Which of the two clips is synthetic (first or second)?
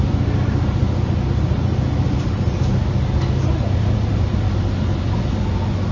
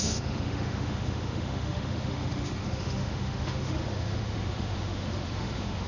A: second